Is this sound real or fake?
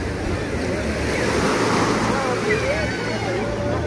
real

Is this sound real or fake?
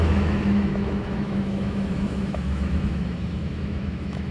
fake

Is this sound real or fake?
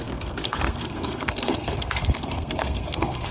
fake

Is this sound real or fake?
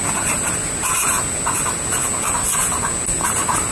real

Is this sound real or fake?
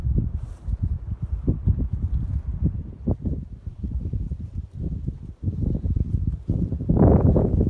fake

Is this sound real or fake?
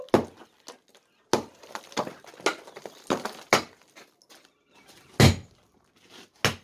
real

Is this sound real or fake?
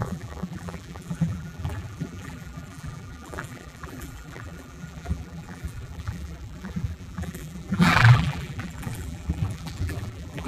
fake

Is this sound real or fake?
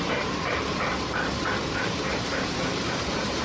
fake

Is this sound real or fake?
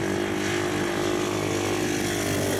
real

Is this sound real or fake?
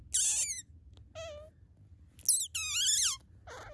real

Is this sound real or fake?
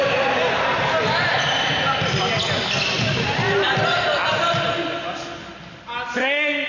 real